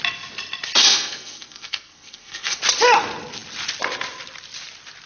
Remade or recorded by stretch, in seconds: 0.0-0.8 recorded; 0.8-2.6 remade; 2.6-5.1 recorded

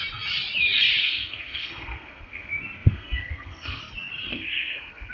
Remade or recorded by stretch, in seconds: 0.0-1.0 recorded; 1.0-2.5 remade; 2.5-2.9 recorded; 2.9-3.8 remade; 3.8-4.3 recorded; 4.3-5.1 remade

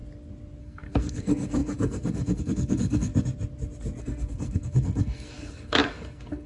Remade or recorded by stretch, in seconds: 0.0-0.6 recorded; 0.6-3.1 remade; 3.1-4.0 recorded; 4.0-6.5 remade

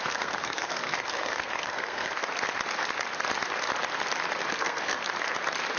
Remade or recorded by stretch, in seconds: 0.0-2.2 remade; 2.2-4.5 recorded; 4.5-5.0 remade; 5.0-5.8 recorded